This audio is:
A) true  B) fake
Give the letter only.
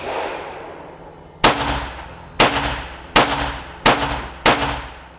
A